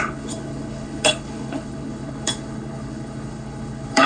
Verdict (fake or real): fake